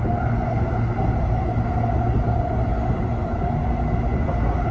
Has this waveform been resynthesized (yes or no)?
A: no